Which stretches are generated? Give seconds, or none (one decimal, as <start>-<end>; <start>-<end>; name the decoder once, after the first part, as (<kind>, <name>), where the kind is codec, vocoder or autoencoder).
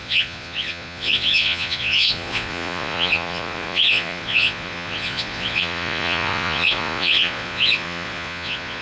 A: 0.0-8.8 (vocoder, Vocos)